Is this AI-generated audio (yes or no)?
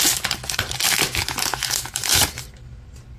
no